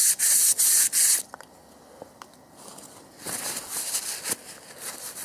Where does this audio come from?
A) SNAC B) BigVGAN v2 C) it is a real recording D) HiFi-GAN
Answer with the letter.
C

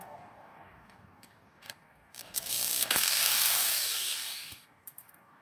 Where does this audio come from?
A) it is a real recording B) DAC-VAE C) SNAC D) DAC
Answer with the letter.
D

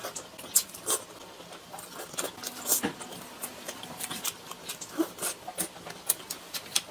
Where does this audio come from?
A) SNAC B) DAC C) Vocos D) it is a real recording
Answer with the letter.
D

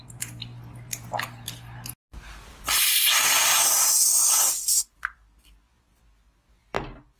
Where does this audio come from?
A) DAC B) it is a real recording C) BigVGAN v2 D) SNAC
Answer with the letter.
B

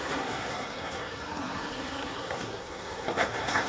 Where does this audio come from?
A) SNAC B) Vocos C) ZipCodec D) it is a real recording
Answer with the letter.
A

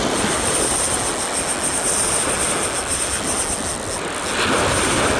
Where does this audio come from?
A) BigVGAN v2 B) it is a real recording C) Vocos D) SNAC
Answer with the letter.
B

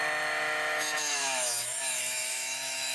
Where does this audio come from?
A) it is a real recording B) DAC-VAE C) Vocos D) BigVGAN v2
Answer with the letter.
B